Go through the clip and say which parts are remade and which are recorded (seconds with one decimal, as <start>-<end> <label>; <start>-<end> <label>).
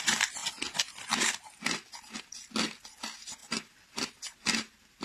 0.0-0.4 remade; 0.4-2.2 recorded; 2.2-3.4 remade; 3.4-4.2 recorded; 4.2-5.0 remade